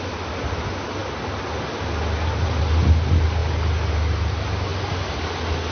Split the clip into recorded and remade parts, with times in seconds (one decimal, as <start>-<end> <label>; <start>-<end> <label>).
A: 0.0-5.7 recorded